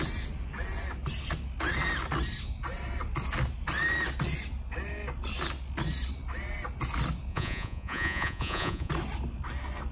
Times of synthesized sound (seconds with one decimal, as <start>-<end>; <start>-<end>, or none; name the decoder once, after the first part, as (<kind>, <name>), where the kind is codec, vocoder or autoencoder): 7.3-8.9 (vocoder, Vocos)